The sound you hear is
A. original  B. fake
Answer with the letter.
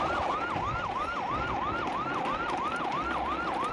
A